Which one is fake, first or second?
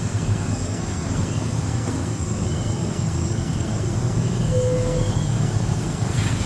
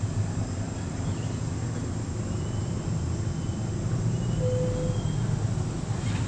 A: first